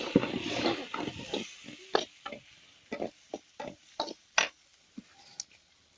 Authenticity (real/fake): real